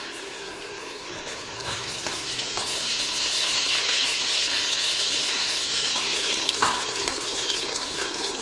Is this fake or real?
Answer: fake